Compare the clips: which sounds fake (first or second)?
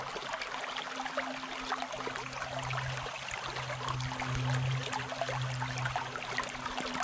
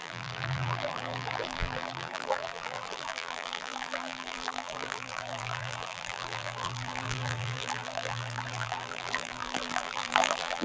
second